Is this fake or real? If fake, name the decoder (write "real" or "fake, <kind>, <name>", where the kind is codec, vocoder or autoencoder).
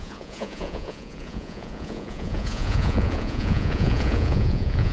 fake, vocoder, Vocos